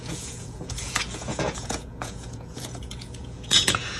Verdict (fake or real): fake